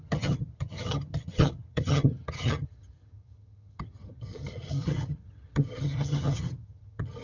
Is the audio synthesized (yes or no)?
yes